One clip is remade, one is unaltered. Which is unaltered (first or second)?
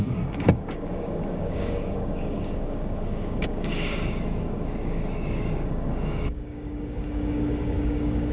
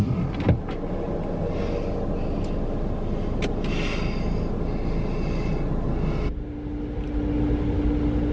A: second